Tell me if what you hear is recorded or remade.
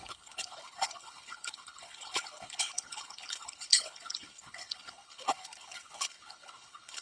remade